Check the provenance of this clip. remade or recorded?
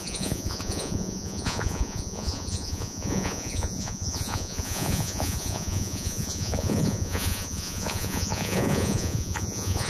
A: remade